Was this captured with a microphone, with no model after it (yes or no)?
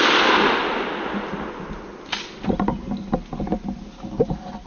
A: yes